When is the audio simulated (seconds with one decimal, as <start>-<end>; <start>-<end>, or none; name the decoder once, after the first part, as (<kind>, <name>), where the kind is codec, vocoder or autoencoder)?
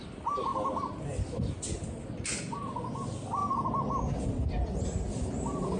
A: none